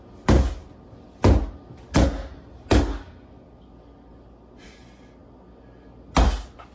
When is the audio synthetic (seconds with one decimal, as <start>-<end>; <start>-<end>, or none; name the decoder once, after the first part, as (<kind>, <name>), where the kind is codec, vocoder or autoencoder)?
none